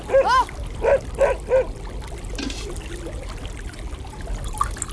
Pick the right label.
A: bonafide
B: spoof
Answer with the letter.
A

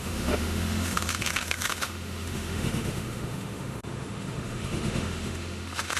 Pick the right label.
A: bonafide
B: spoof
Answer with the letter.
B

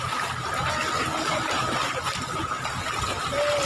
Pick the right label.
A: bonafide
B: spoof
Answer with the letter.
A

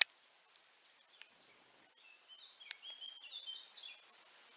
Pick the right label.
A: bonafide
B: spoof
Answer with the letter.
A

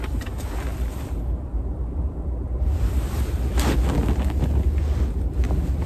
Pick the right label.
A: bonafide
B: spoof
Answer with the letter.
A